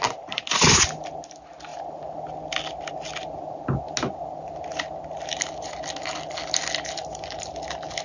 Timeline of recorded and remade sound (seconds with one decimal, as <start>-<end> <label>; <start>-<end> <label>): 0.0-8.0 recorded